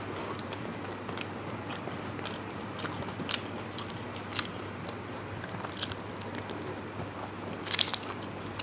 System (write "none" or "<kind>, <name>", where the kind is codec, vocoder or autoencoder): none